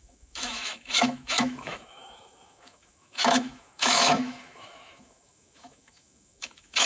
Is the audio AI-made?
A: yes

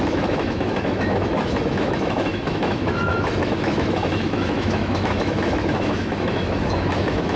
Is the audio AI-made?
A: yes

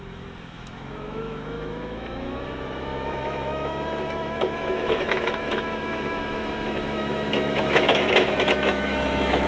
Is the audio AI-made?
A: yes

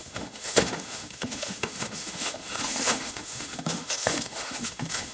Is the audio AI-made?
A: yes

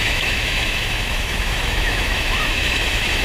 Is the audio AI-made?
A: yes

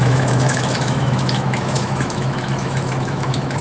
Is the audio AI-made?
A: yes